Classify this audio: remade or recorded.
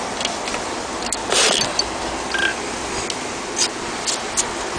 recorded